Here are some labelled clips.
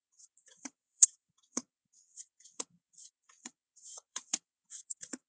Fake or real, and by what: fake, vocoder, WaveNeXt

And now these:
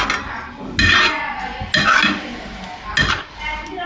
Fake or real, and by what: real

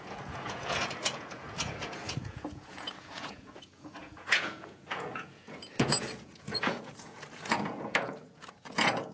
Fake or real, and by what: fake, vocoder, Vocos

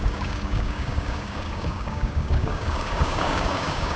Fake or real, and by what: fake, codec, DAC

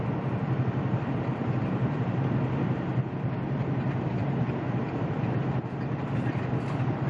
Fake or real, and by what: fake, vocoder, BigVGAN v2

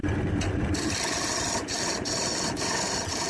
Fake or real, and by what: real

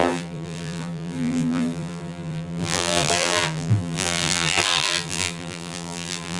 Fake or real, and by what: fake, vocoder, BigVGAN v2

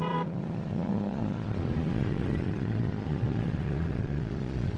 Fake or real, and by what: fake, vocoder, Vocos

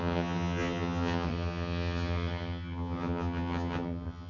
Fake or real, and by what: fake, vocoder, HiFi-GAN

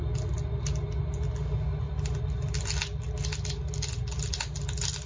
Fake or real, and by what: real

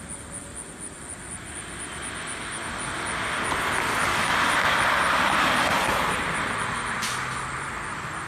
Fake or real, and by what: real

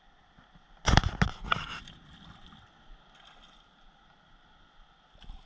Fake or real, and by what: real